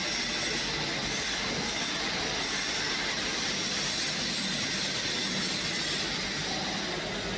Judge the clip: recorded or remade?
recorded